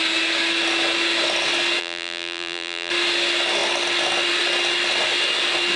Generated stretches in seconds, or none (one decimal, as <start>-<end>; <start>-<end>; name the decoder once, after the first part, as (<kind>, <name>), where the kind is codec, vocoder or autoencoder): 1.8-2.9 (vocoder, BigVGAN v2)